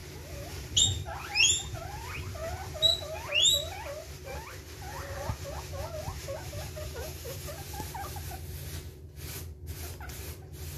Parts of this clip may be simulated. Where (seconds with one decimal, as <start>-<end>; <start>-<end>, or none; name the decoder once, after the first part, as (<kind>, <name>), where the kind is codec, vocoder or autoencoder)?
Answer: 6.1-7.5 (vocoder, BigVGAN v2)